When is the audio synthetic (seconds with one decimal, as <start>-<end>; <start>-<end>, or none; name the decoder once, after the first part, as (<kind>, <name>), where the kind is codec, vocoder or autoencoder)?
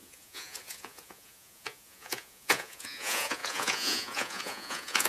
0.0-5.1 (vocoder, Vocos)